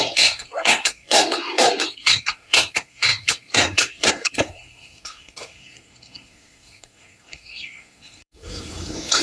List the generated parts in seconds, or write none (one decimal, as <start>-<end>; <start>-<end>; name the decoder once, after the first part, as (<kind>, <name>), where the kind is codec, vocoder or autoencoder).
0.0-9.2 (codec, SNAC)